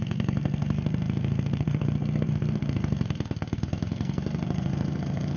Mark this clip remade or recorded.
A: remade